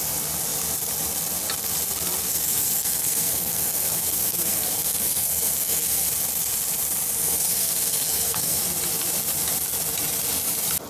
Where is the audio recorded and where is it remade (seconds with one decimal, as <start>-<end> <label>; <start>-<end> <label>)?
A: 0.0-2.3 recorded; 2.3-6.1 remade; 6.1-7.2 recorded; 7.2-8.6 remade; 8.6-10.9 recorded